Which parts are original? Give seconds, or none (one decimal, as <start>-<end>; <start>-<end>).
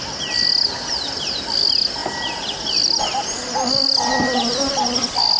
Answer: 0.0-5.4